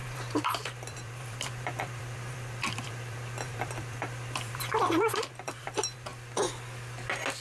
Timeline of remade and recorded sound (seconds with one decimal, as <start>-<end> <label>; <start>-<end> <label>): 0.0-6.1 remade; 6.1-7.4 recorded